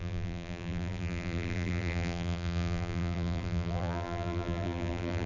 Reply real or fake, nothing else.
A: fake